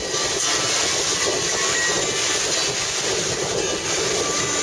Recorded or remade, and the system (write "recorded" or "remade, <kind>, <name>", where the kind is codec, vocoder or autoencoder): recorded